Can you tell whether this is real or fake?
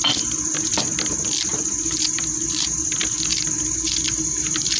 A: real